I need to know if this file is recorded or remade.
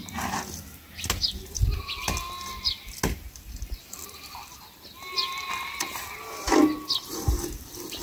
recorded